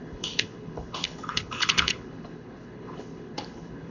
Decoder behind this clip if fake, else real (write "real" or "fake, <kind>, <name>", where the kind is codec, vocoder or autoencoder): fake, codec, HILCodec